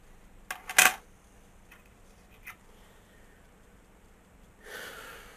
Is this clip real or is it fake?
real